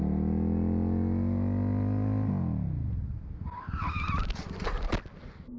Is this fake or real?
real